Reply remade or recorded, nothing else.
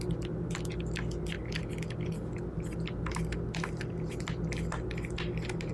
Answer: recorded